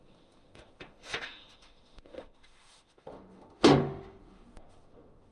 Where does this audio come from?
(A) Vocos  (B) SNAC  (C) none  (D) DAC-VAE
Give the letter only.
D